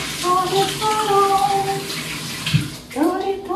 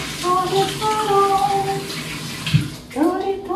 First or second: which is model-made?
first